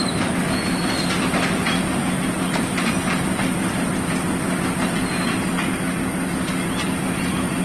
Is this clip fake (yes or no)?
no